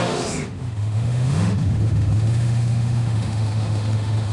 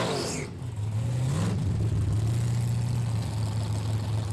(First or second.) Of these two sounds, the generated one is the first